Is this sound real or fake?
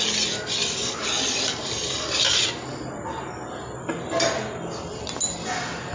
real